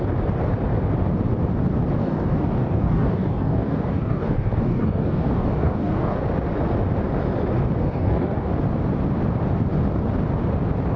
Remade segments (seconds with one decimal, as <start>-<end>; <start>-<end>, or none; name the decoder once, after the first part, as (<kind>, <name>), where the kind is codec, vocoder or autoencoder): 2.0-6.2 (codec, DAC); 7.8-8.5